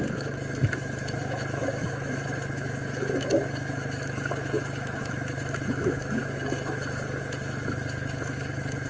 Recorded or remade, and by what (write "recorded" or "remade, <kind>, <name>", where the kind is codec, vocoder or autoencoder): remade, autoencoder, DAC-VAE